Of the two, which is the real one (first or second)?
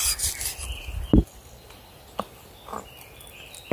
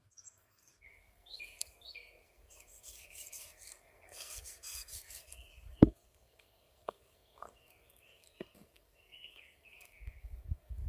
first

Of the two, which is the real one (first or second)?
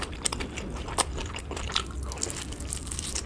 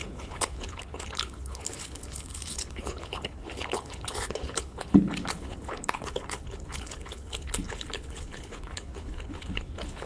first